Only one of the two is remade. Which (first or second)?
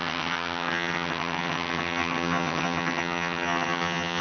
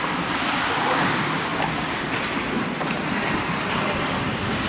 first